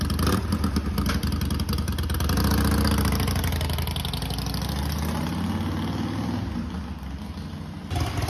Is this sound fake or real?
real